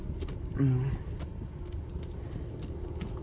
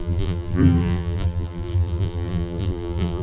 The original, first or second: first